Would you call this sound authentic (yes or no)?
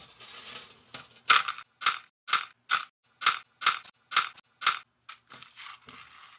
yes